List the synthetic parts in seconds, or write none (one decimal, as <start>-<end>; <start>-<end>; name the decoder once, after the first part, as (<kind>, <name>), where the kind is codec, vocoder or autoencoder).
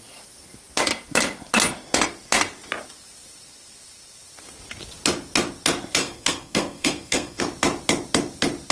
6.0-7.4 (codec, SNAC)